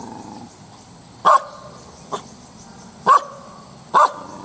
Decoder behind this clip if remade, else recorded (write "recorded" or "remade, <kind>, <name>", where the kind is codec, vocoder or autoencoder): recorded